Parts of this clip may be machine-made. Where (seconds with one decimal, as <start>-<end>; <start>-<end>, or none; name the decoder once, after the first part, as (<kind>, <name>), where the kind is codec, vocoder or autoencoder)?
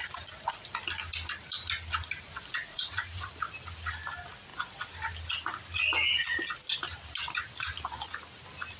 2.6-3.3 (vocoder, Vocos)